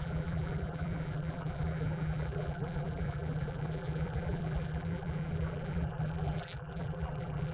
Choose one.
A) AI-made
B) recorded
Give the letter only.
A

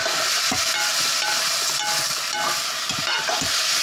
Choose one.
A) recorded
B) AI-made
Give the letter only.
A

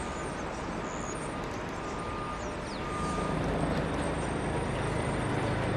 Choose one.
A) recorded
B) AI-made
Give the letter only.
A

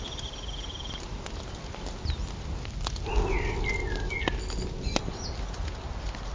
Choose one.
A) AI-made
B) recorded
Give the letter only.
B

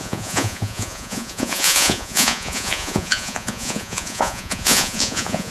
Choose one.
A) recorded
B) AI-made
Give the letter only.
B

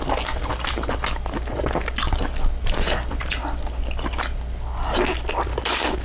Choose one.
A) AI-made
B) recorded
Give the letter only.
B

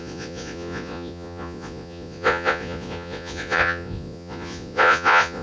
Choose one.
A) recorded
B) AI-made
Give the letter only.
B